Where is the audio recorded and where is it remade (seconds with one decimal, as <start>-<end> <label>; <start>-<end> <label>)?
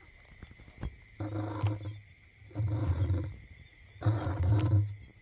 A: 0.0-2.8 recorded; 2.8-4.5 remade; 4.5-5.2 recorded